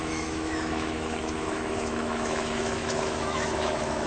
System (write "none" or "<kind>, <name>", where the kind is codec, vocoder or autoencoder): autoencoder, DAC-VAE